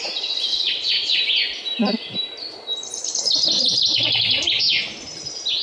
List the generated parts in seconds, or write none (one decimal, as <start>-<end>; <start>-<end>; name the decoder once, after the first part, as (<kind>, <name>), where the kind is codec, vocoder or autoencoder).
0.5-1.2 (vocoder, WaveNeXt)

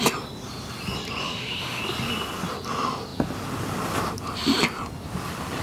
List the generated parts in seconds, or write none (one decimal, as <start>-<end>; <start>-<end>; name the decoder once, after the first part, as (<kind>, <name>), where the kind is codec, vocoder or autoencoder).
1.2-1.8 (autoencoder, DAC-VAE)

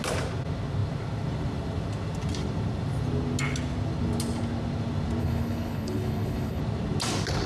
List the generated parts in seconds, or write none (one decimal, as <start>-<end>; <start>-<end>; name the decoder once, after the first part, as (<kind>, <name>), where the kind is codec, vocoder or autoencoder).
5.2-6.6 (codec, HILCodec)

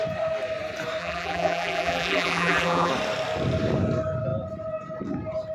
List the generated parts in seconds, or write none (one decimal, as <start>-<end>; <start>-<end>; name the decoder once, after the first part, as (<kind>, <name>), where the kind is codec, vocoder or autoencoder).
1.0-2.9 (vocoder, BigVGAN v2)

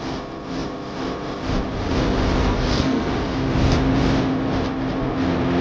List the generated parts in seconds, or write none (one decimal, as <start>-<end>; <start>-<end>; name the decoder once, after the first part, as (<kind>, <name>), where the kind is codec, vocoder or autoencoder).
2.4-3.1 (codec, SNAC)

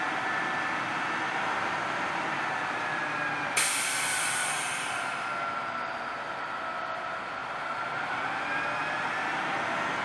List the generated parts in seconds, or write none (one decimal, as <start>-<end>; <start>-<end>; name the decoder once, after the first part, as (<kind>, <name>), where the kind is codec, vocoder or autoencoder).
none